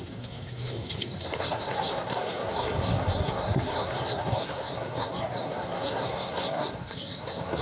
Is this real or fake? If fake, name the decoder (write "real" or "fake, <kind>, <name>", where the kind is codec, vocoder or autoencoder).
fake, codec, SNAC